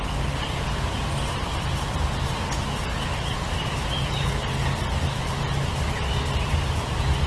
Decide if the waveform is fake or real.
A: real